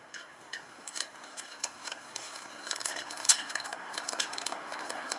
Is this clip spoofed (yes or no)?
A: yes